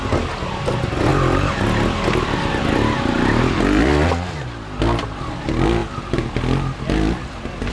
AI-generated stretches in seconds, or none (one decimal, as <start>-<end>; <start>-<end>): none